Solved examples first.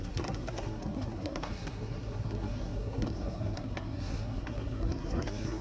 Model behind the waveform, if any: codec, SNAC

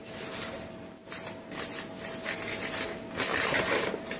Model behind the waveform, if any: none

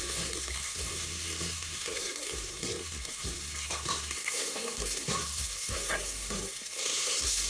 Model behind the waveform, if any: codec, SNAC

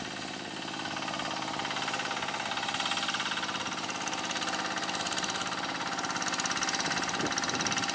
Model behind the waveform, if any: none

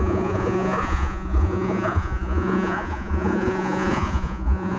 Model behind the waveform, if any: vocoder, Vocos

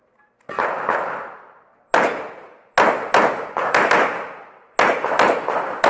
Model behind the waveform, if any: none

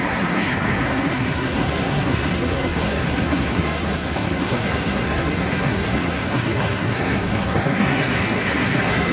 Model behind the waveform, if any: codec, SNAC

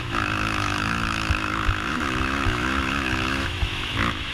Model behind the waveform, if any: autoencoder, DAC-VAE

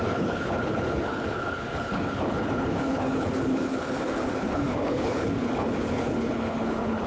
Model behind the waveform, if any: codec, HILCodec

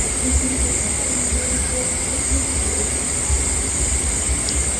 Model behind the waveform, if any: none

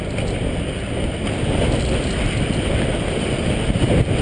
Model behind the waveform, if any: none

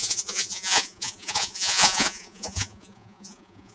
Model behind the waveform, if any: vocoder, Vocos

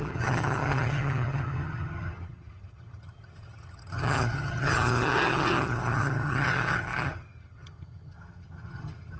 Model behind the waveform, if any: vocoder, HiFi-GAN